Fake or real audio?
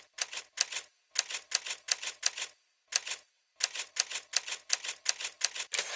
real